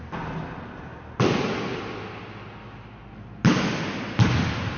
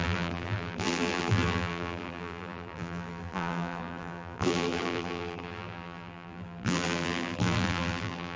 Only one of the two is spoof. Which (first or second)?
second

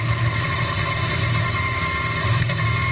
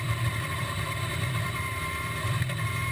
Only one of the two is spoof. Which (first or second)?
second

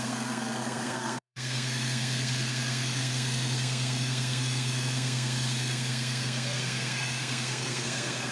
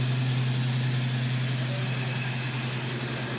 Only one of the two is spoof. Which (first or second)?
first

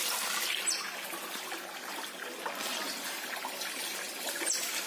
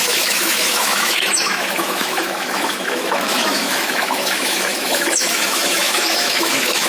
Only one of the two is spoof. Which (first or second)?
second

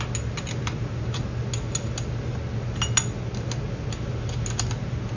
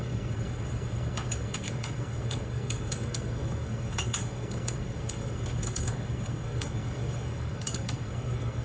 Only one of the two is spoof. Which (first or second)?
second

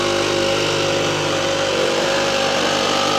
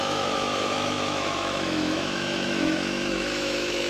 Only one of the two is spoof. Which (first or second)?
second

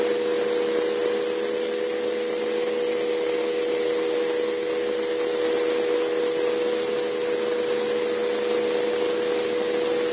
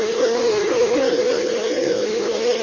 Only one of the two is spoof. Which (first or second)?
second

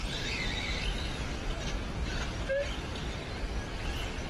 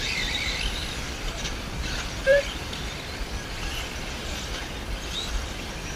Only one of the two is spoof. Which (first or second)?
second